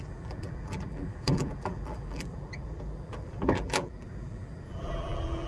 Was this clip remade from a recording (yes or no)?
yes